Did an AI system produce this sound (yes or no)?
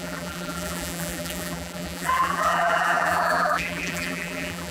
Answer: yes